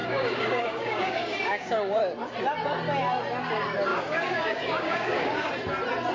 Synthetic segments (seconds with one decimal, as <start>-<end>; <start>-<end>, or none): 0.0-2.0; 3.9-5.5